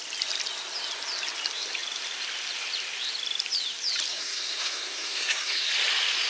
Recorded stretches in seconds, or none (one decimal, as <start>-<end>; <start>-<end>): 0.0-4.1; 5.7-6.3